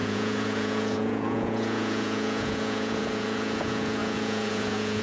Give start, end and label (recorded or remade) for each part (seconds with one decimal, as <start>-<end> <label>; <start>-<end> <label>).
0.0-5.0 remade